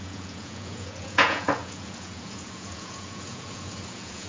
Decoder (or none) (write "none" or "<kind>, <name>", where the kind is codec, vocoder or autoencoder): vocoder, Vocos